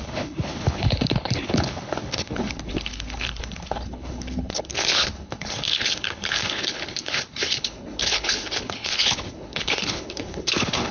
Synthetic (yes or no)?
yes